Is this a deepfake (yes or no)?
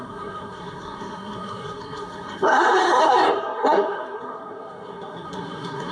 yes